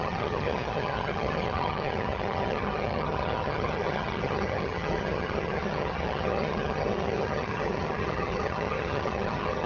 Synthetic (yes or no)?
yes